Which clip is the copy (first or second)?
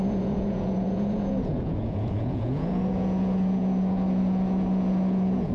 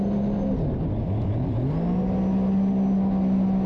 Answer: first